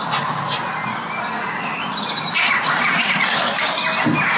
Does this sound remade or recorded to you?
recorded